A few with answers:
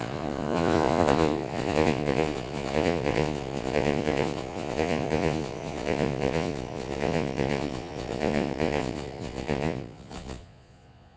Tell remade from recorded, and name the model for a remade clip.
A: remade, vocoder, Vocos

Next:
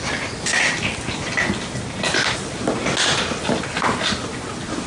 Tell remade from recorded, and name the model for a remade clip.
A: recorded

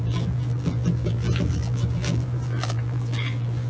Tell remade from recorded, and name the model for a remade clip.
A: remade, vocoder, BigVGAN v2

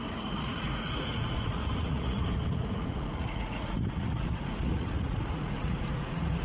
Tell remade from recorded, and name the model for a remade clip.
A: remade, vocoder, Vocos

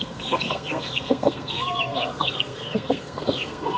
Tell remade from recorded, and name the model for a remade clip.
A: remade, codec, SNAC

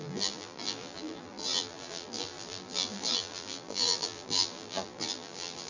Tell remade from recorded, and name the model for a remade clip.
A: remade, vocoder, BigVGAN v2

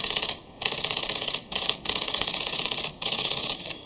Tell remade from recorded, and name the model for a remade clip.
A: remade, codec, DAC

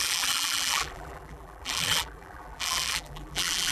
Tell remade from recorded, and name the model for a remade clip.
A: remade, vocoder, BigVGAN v2